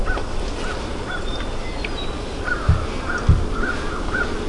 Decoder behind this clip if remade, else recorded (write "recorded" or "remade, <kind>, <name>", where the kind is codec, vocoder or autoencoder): recorded